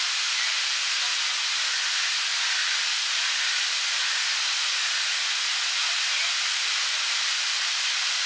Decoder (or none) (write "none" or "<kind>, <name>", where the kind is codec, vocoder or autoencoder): none